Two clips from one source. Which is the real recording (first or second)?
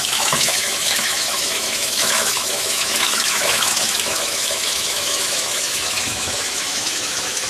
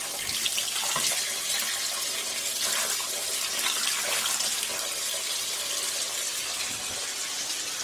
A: second